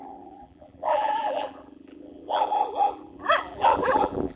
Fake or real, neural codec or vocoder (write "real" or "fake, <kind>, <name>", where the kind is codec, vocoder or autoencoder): fake, vocoder, BigVGAN v2